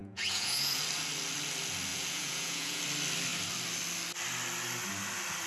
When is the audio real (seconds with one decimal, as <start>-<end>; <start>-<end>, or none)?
0.8-1.9; 2.8-5.5